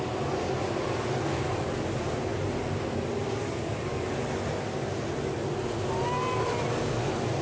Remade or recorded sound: recorded